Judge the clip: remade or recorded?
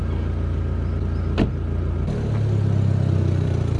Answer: recorded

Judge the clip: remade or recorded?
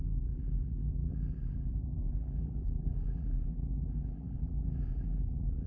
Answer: remade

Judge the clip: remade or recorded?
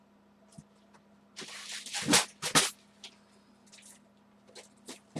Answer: recorded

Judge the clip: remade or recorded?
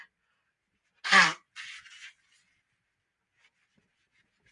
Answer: recorded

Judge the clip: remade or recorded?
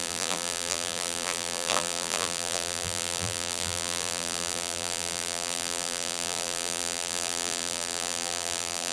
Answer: remade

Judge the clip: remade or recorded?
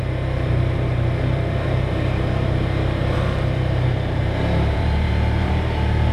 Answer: remade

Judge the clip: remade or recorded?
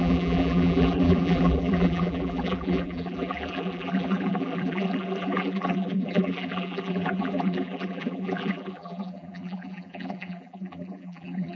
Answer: remade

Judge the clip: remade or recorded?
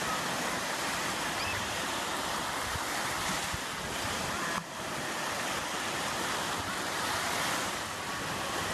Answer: recorded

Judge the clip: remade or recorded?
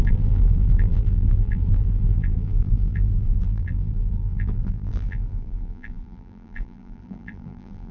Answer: remade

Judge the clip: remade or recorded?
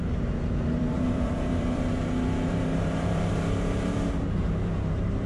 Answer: remade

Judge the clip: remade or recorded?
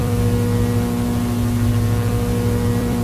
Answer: remade